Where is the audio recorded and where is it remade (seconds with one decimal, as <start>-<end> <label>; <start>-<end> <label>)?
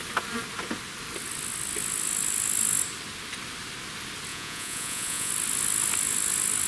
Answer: 0.0-4.3 recorded; 4.3-5.3 remade; 5.3-6.7 recorded